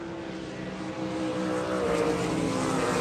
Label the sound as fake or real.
real